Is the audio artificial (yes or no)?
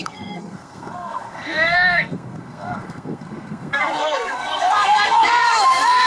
yes